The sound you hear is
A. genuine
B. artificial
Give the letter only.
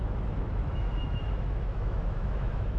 B